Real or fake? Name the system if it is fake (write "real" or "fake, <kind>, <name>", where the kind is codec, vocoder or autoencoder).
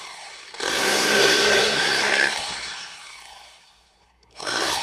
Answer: fake, codec, SNAC